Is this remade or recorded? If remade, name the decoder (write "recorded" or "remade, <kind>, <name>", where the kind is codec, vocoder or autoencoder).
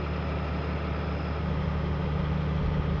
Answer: recorded